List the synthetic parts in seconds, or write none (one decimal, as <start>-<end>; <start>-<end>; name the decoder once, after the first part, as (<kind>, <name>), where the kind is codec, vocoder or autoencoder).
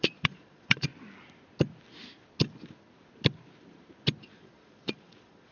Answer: 0.0-0.9 (vocoder, Vocos); 4.2-5.5